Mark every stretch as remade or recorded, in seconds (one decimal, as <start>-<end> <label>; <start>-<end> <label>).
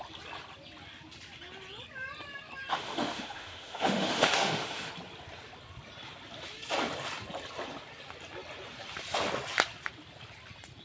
0.0-2.7 recorded; 2.7-4.9 remade; 4.9-10.8 recorded